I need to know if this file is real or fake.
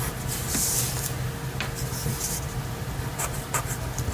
real